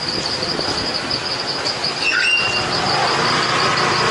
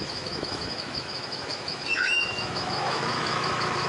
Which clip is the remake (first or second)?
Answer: second